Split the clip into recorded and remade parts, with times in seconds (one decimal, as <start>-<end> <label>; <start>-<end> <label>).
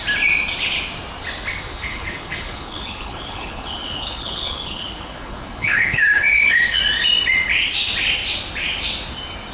0.0-1.7 recorded; 1.7-6.8 remade; 6.8-9.5 recorded